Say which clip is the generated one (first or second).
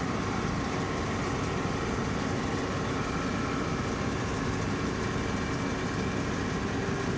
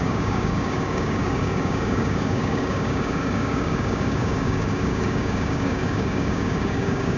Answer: second